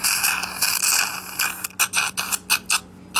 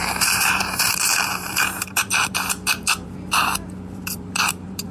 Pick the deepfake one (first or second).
second